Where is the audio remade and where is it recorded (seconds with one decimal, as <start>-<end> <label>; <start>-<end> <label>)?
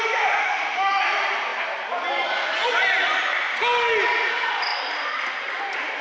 0.0-0.4 recorded; 0.4-1.0 remade; 1.0-6.0 recorded